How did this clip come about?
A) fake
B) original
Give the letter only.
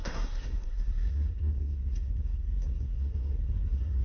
A